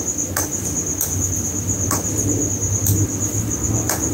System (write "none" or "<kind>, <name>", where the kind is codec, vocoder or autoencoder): none